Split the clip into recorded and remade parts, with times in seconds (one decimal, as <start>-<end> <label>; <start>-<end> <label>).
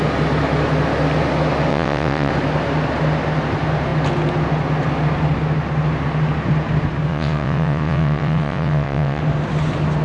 0.0-1.7 recorded; 1.7-2.3 remade; 2.3-7.1 recorded; 7.1-9.2 remade; 9.2-10.0 recorded